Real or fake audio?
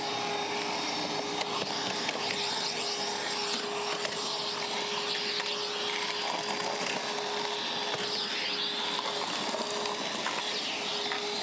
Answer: real